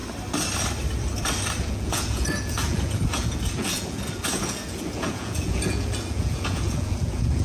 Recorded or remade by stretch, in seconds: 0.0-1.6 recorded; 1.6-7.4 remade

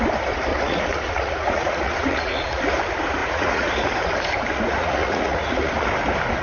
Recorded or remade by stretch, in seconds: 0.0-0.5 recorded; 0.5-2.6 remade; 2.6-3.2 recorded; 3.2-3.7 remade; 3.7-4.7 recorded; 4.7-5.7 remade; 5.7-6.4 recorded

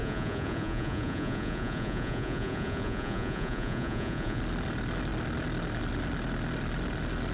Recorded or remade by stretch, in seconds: 0.0-4.4 remade; 4.4-7.3 recorded

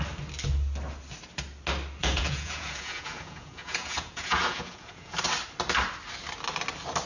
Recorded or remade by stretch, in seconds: 0.0-2.0 recorded; 2.0-5.2 remade; 5.2-7.1 recorded